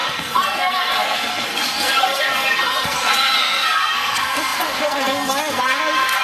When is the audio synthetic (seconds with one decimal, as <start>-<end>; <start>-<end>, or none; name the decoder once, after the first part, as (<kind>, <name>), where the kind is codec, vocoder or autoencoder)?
0.0-6.2 (codec, SNAC)